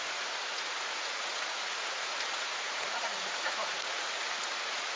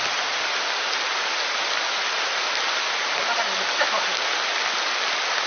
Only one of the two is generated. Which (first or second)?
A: first